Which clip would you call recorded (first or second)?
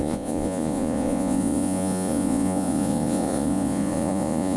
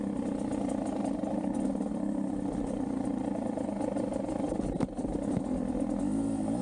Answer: second